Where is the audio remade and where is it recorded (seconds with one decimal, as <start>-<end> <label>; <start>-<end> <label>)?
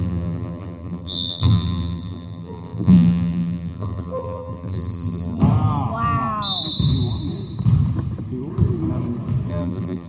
0.0-5.4 remade; 5.4-9.5 recorded; 9.5-10.1 remade